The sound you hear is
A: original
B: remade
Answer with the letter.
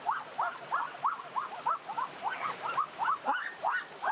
A